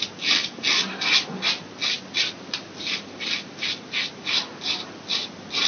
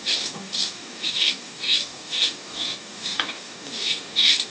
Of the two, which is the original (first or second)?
first